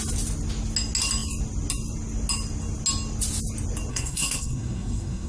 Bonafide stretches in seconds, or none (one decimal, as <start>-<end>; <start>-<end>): 0.0-3.9